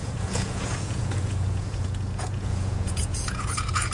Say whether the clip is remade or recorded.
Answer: remade